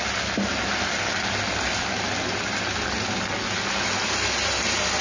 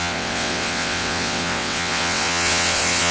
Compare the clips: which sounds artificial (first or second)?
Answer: second